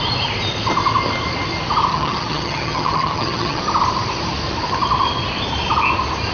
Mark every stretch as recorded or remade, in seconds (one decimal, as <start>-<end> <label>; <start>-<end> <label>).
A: 0.0-1.9 recorded; 1.9-3.6 remade; 3.6-6.3 recorded